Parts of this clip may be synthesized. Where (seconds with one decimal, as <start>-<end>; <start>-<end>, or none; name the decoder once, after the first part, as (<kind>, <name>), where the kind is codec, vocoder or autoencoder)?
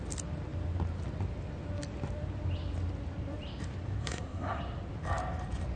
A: 4.0-4.6 (codec, SNAC)